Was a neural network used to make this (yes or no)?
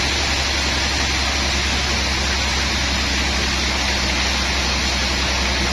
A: no